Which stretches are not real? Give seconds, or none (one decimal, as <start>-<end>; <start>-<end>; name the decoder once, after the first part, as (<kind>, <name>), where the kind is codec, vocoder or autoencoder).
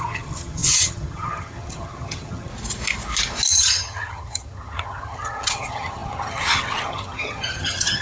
0.0-2.5 (vocoder, HiFi-GAN); 3.5-8.0